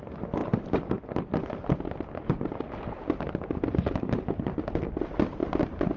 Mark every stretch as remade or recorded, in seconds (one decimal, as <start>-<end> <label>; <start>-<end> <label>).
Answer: 0.0-6.0 recorded